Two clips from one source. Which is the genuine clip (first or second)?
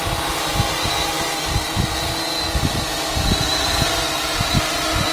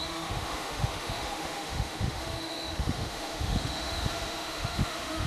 first